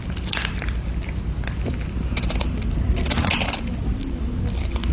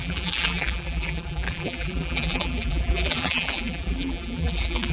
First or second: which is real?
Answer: first